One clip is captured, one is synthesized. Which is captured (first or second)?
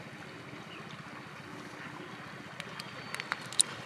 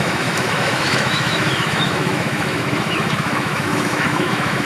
first